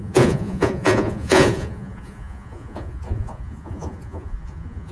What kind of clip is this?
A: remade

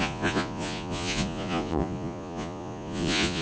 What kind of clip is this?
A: remade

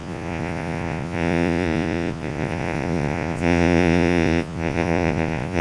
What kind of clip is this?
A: remade